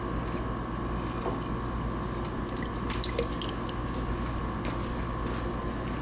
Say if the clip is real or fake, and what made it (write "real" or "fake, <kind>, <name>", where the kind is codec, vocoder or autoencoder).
real